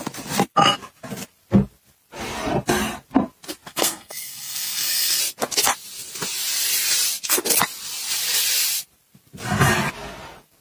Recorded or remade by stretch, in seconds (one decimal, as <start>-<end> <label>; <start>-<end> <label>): 0.0-3.7 recorded; 3.7-5.2 remade; 5.2-10.6 recorded